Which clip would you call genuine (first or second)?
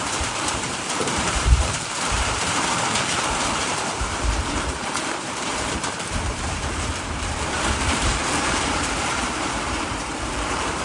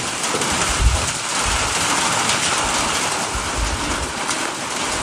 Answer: second